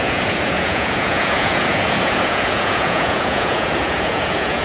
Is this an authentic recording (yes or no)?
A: no